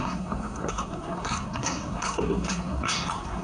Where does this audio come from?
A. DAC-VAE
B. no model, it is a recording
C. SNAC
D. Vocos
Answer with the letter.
C